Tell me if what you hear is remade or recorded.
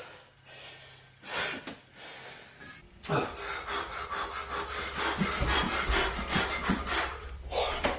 recorded